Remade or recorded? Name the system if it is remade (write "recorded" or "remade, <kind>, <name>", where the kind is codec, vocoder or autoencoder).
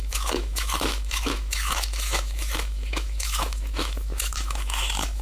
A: remade, autoencoder, DAC-VAE